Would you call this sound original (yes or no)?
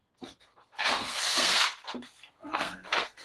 no